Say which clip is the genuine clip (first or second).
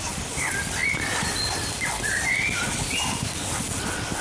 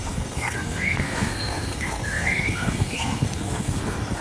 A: first